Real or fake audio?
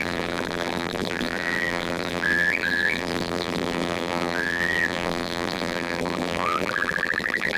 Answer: fake